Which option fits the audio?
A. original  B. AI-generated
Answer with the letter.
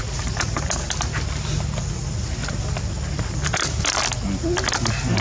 A